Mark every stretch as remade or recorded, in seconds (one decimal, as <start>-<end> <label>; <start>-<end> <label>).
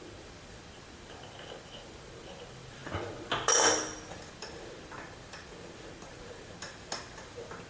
0.0-7.7 recorded